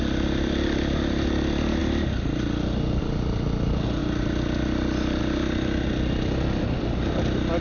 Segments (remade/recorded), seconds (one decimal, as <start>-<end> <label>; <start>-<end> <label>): 0.0-7.6 recorded

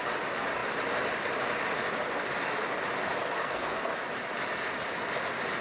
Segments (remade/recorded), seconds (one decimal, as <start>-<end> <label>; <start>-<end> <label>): 0.0-3.4 recorded; 3.4-3.9 remade; 3.9-5.6 recorded

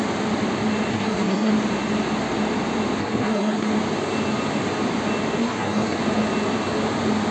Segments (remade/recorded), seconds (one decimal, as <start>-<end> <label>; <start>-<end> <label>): 0.0-0.9 recorded; 0.9-1.5 remade; 1.5-3.0 recorded; 3.0-3.7 remade; 3.7-5.4 recorded; 5.4-6.0 remade; 6.0-7.3 recorded

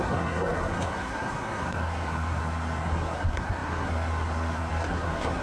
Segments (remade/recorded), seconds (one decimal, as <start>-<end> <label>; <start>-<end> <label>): 0.0-5.4 remade

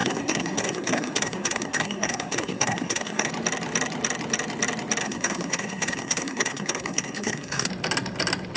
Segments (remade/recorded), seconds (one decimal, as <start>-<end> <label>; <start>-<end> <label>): 0.0-3.3 remade; 3.3-5.0 recorded; 5.0-7.7 remade; 7.7-8.6 recorded